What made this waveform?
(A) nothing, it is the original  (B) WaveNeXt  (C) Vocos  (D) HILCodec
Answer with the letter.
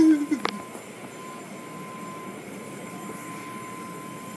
A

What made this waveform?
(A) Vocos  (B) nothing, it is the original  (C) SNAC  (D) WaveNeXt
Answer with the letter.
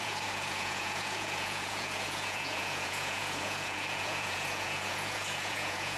A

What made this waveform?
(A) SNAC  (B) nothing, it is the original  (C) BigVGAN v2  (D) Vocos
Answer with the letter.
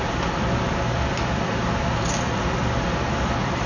C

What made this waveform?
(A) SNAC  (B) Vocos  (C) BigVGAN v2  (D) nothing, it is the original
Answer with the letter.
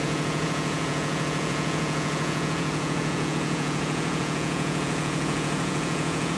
B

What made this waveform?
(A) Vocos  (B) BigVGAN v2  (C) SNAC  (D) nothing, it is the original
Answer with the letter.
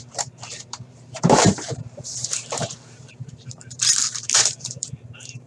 B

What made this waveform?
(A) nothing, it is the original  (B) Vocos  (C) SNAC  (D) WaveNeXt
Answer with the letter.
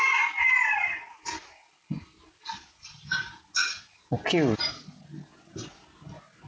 A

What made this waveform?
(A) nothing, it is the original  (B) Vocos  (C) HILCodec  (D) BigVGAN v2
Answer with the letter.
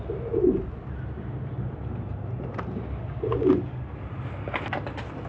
A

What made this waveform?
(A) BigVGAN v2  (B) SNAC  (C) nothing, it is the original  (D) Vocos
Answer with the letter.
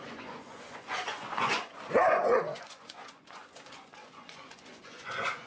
D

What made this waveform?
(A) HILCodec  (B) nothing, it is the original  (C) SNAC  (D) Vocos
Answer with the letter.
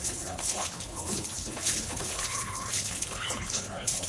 A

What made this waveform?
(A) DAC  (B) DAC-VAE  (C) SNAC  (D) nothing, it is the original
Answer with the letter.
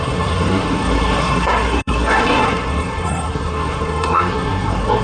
C